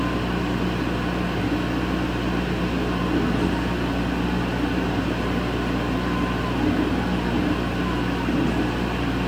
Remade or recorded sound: recorded